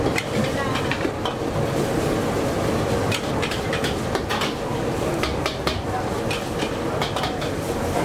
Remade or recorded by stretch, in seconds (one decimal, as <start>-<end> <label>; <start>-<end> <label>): 0.0-8.0 recorded